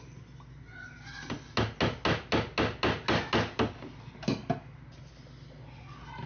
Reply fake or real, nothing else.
real